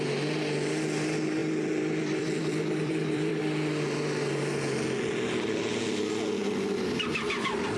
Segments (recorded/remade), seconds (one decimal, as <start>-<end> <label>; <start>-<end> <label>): 0.0-1.4 recorded; 1.4-3.4 remade; 3.4-7.8 recorded